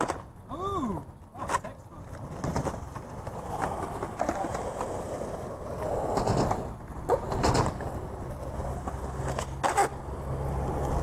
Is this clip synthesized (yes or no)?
no